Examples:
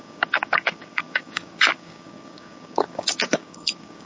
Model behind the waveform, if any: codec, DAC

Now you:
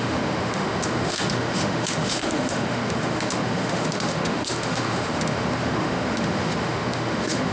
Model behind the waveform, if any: autoencoder, DAC-VAE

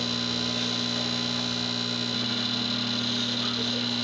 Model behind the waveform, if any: none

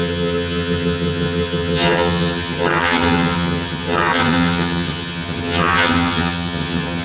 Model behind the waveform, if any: vocoder, HiFi-GAN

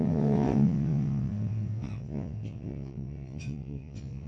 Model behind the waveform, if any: vocoder, WaveNeXt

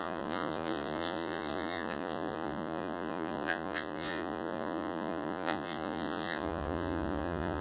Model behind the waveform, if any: vocoder, Vocos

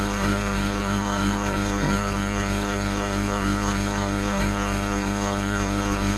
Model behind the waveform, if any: codec, SNAC